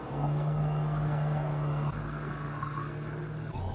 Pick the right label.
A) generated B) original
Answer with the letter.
A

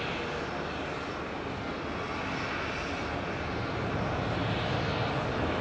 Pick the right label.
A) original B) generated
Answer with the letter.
A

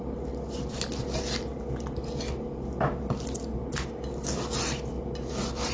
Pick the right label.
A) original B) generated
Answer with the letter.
A